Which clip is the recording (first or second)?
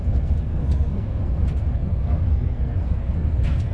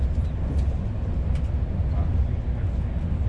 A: second